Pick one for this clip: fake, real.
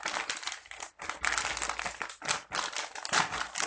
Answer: real